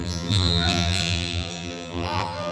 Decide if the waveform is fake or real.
fake